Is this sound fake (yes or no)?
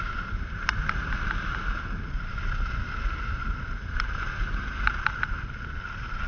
no